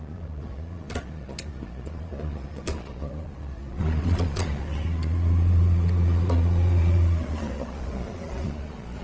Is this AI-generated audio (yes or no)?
yes